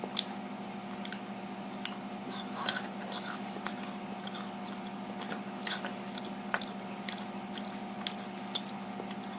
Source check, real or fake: real